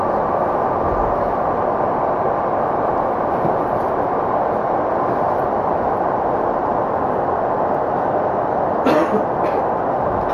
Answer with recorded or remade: recorded